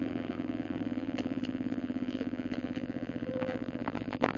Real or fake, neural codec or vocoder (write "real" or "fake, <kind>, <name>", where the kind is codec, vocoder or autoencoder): fake, vocoder, BigVGAN v2